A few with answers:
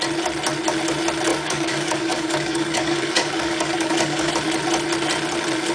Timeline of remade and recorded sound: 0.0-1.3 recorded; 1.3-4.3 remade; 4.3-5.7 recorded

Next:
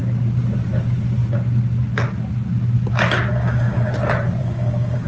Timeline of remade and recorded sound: 0.0-3.3 recorded; 3.3-3.9 remade; 3.9-4.4 recorded; 4.4-5.1 remade

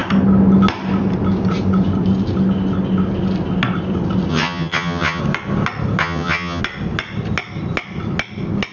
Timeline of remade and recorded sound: 0.0-4.3 recorded; 4.3-5.2 remade; 5.2-6.0 recorded; 6.0-6.6 remade; 6.6-8.7 recorded

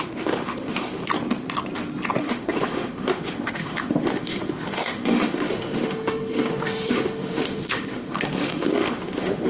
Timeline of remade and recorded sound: 0.0-1.0 remade; 1.0-2.2 recorded; 2.2-9.5 remade

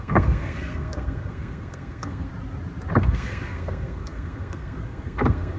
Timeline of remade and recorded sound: 0.0-2.3 remade; 2.3-3.0 recorded; 3.0-5.6 remade